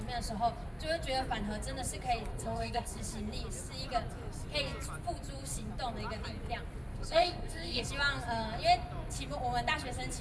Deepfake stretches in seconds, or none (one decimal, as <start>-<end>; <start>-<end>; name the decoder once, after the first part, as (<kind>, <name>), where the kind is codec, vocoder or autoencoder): 2.3-3.0 (codec, SNAC); 6.9-7.9

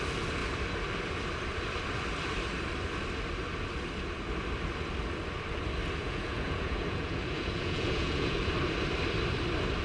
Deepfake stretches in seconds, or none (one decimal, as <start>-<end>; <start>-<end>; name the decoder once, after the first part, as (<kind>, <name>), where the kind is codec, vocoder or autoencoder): 6.0-8.5 (vocoder, Vocos)

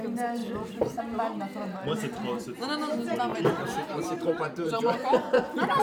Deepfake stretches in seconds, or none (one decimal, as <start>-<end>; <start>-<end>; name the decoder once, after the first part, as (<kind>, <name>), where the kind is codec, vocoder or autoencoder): 0.4-1.0 (vocoder, BigVGAN v2); 3.3-5.8

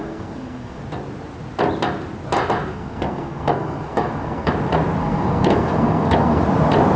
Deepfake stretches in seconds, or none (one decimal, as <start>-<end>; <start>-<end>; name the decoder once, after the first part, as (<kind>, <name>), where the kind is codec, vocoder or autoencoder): 0.0-0.8 (codec, SNAC); 2.7-4.5; 5.0-6.4